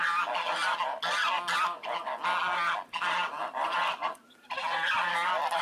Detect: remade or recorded recorded